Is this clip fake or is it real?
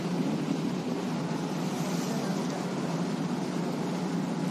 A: real